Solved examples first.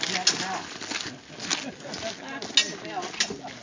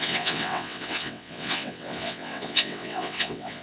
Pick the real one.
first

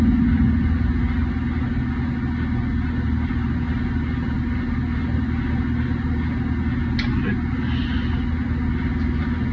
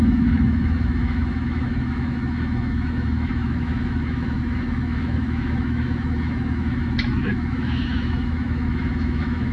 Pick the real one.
first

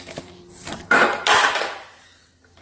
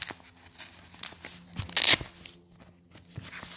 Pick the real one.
second